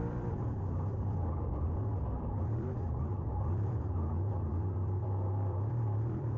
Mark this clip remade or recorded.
remade